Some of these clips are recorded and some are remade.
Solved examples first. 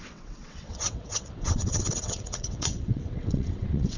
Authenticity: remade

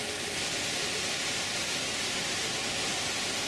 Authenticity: recorded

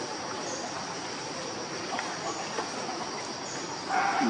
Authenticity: recorded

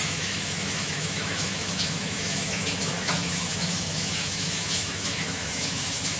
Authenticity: remade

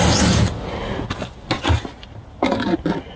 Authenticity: recorded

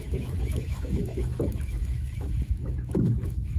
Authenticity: remade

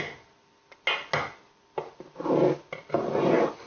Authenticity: recorded